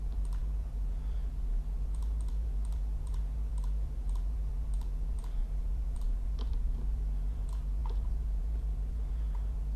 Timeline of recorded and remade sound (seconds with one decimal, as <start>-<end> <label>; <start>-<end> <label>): 0.0-9.8 remade